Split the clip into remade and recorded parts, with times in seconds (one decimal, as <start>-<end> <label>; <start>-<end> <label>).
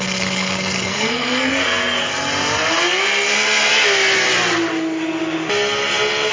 0.0-2.1 remade; 2.1-6.3 recorded